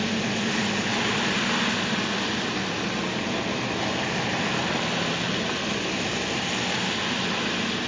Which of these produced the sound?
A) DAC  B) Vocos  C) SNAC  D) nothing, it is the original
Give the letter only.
D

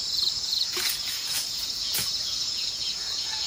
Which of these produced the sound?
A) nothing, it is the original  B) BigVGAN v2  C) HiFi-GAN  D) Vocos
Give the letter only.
D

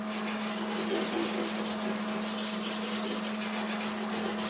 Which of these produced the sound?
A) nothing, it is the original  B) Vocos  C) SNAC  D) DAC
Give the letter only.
A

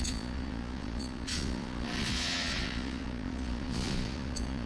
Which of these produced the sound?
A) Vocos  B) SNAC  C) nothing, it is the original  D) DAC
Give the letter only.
A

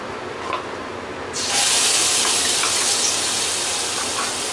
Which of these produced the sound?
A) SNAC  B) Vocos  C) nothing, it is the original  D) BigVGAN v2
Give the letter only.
C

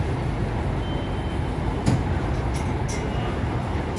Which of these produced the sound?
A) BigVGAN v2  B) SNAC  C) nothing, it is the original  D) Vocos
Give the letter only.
C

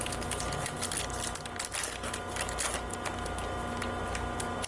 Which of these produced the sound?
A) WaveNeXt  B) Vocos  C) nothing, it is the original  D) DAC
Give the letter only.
C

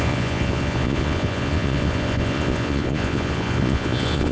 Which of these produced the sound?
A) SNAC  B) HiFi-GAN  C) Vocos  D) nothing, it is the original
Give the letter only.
C